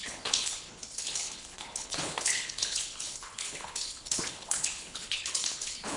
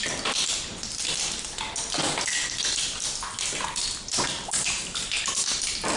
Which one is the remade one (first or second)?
first